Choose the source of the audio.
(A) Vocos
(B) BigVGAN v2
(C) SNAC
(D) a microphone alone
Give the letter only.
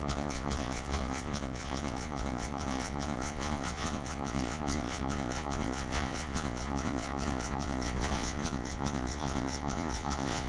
A